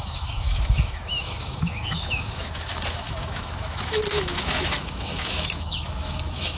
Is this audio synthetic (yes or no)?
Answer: yes